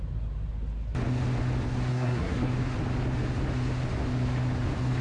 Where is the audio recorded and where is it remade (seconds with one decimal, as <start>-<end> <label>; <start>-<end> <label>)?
0.0-1.9 recorded; 1.9-2.5 remade; 2.5-5.0 recorded